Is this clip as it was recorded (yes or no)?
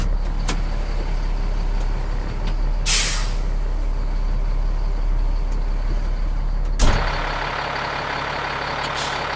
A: yes